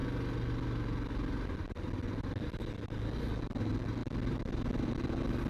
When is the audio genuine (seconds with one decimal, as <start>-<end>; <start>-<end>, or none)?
0.0-5.5